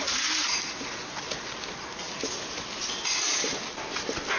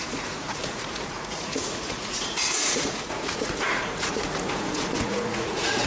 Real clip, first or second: first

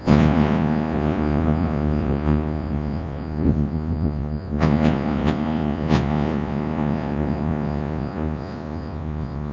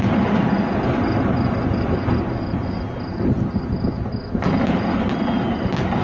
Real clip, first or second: second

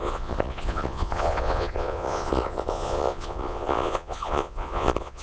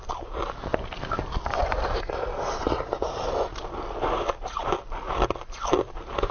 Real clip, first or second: second